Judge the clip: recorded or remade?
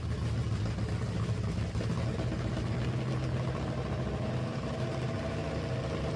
recorded